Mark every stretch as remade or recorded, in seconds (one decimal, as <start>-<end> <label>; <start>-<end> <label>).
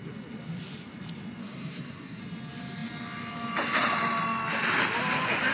0.0-1.4 recorded; 1.4-2.2 remade; 2.2-5.5 recorded